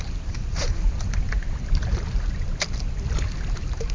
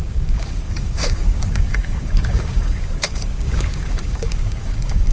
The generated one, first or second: second